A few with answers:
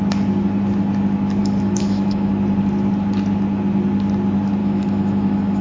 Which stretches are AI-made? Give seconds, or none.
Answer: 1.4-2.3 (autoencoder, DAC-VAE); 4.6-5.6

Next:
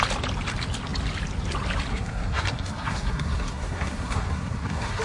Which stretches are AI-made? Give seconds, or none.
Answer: 1.9-5.0 (codec, SNAC)

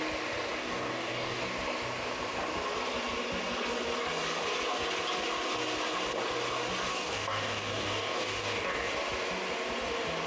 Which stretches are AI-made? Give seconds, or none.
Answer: 0.6-1.4 (codec, DAC); 6.9-8.9

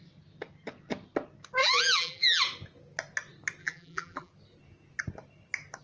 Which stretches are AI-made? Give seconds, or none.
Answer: 1.6-2.4 (vocoder, BigVGAN v2); 3.6-4.3

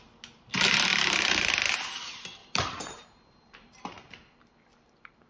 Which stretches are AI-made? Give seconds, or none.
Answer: 0.9-1.5 (vocoder, BigVGAN v2); 2.4-4.1